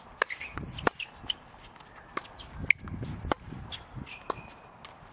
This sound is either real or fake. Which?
real